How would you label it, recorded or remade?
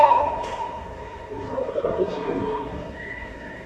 remade